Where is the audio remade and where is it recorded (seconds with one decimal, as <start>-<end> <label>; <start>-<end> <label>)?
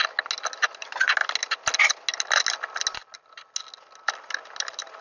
0.0-5.0 recorded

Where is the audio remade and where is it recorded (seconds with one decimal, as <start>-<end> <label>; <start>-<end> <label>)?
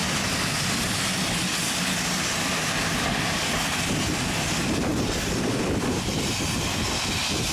0.0-4.9 recorded; 4.9-5.6 remade; 5.6-7.5 recorded